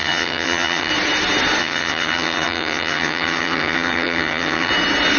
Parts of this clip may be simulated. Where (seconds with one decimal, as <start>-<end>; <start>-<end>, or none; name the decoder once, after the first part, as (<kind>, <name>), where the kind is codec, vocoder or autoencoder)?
0.0-0.9 (vocoder, HiFi-GAN); 1.6-4.7